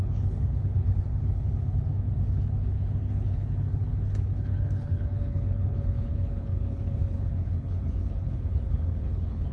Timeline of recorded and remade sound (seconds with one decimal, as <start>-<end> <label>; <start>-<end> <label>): 0.0-9.5 remade